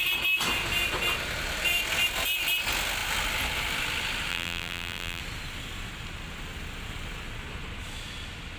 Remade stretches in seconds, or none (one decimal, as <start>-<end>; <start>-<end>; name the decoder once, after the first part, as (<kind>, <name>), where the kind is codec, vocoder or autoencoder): 4.3-5.2 (vocoder, BigVGAN v2)